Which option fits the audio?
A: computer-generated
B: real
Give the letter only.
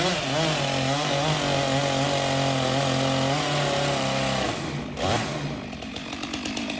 B